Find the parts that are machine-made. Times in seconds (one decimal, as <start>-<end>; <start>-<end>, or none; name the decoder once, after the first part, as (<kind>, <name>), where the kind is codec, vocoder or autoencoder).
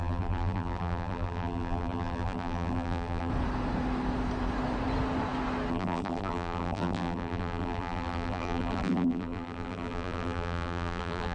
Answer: 0.0-3.3 (vocoder, BigVGAN v2); 5.7-11.3